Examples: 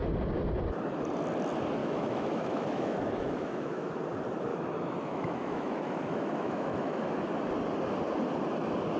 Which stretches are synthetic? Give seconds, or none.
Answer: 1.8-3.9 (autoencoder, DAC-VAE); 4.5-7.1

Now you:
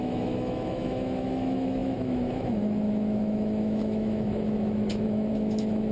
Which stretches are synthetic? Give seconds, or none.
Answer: 0.0-5.9 (autoencoder, DAC-VAE)

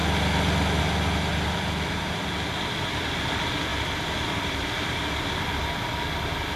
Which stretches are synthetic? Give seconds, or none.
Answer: none